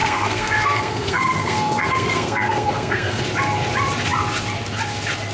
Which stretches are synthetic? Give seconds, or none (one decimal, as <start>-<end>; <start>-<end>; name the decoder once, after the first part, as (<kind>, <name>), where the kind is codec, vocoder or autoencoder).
0.0-3.2 (codec, SNAC)